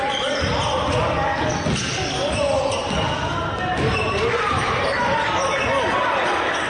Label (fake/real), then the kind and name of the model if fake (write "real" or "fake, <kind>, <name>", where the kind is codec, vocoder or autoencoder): real